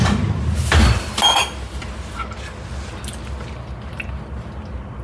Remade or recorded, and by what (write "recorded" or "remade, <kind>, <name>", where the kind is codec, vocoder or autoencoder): recorded